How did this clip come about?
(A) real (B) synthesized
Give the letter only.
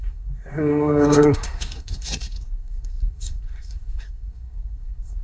B